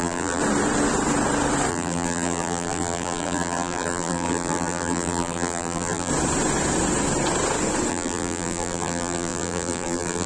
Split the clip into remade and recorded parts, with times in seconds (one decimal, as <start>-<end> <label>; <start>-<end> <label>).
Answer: 0.0-0.4 remade; 0.4-1.7 recorded; 1.7-6.1 remade; 6.1-7.9 recorded; 7.9-10.3 remade